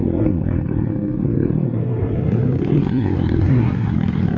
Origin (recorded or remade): remade